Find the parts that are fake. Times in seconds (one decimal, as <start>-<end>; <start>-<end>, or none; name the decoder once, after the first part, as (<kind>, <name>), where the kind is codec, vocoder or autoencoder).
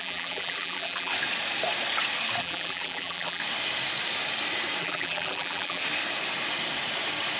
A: 0.0-1.1 (vocoder, BigVGAN v2); 2.4-3.4; 4.8-5.8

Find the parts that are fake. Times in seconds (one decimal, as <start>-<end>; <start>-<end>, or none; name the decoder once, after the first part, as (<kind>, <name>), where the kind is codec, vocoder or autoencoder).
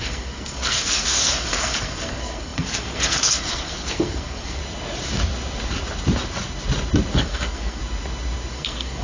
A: 0.0-4.6 (codec, SNAC); 7.1-7.8; 8.5-9.0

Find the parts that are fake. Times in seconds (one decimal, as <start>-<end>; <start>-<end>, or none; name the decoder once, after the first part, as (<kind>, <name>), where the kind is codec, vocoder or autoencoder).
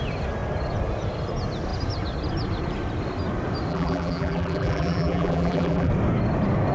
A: 3.7-5.9 (vocoder, BigVGAN v2)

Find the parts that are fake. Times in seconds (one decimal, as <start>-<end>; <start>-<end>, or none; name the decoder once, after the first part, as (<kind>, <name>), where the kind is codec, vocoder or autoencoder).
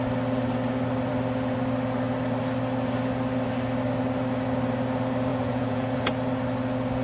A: 5.3-6.1 (vocoder, Vocos)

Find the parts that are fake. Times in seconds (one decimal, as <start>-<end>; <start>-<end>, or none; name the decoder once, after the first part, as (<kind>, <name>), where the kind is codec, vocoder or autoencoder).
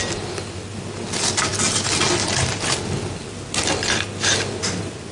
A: none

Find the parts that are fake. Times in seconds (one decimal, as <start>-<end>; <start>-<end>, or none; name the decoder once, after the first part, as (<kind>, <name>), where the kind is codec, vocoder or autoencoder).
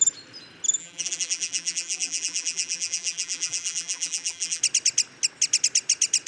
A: 0.8-4.6 (vocoder, BigVGAN v2)